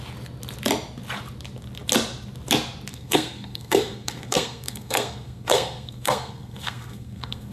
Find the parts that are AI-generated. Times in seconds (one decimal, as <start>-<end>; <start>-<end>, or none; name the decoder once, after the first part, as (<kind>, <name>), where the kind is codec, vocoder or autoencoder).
2.9-7.5 (codec, SNAC)